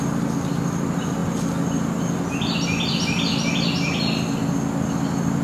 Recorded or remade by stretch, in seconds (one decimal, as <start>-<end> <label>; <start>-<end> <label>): 0.0-5.4 recorded